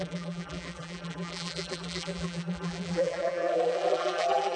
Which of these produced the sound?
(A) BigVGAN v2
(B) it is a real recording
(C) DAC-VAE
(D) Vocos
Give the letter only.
A